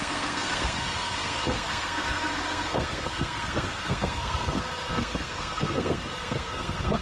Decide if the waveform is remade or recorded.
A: remade